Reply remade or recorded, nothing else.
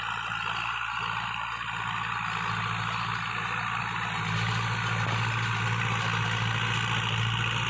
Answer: recorded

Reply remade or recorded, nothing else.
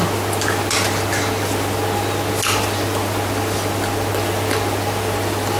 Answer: recorded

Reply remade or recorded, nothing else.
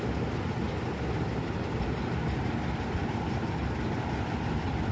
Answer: recorded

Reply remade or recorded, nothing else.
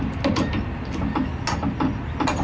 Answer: recorded